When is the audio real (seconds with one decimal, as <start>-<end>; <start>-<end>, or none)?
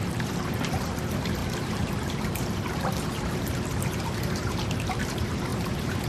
none